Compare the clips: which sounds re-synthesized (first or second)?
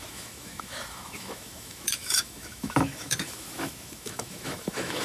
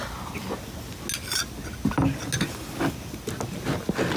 first